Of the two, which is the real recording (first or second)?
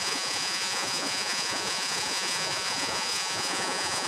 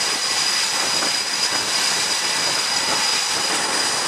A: second